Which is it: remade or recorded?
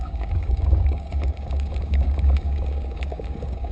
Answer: remade